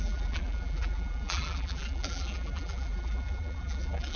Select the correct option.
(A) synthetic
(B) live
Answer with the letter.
A